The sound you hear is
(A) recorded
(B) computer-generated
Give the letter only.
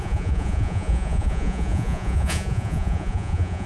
B